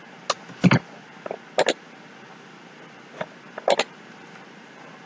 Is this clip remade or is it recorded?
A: recorded